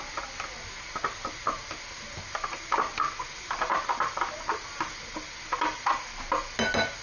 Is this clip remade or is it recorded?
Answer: recorded